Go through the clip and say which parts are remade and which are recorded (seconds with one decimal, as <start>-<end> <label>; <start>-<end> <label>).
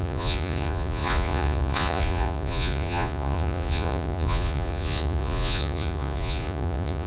0.0-7.1 remade